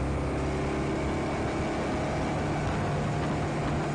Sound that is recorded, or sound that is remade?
recorded